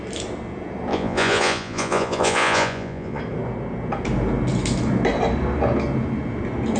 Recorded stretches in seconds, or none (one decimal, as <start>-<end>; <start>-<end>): 0.0-0.9; 3.2-6.8